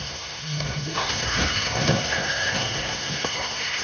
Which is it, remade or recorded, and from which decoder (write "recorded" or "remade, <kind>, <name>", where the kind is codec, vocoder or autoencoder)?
remade, codec, SNAC